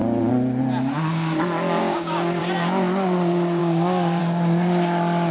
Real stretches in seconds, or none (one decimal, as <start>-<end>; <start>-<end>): 0.0-1.8; 2.4-3.6; 4.2-5.3